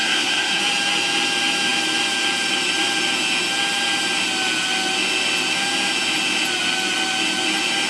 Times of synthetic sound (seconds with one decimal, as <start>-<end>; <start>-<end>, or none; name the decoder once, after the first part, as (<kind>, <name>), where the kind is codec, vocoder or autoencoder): 0.0-0.6 (codec, SNAC)